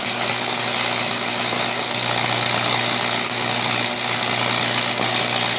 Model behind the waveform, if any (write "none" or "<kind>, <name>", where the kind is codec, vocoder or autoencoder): none